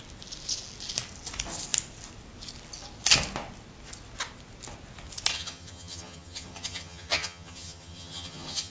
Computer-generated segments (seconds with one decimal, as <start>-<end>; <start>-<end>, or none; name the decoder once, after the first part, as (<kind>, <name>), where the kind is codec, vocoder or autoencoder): 5.3-8.7 (vocoder, HiFi-GAN)